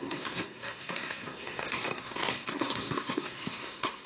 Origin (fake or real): fake